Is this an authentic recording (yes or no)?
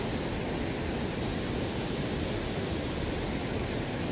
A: yes